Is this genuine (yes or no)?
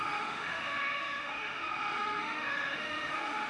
no